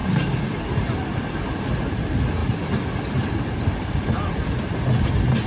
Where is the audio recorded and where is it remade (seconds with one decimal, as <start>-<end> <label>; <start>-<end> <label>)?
0.0-5.5 recorded